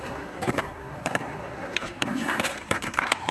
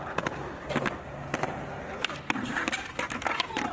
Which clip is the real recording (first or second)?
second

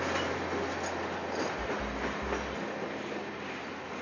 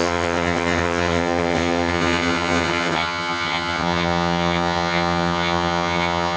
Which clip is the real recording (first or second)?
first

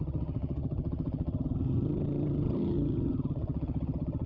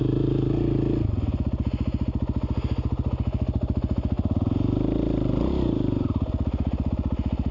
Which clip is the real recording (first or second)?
second